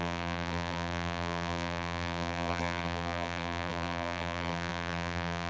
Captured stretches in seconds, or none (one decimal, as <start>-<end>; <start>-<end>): none